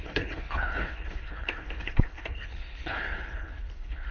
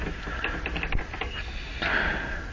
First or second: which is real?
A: second